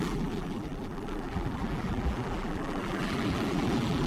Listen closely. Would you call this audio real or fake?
fake